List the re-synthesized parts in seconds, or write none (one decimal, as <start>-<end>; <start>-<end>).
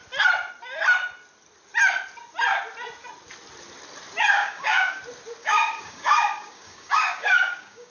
4.3-5.0; 5.4-7.9